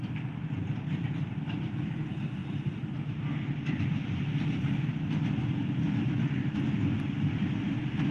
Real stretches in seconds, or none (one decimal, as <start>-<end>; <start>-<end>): 0.0-8.1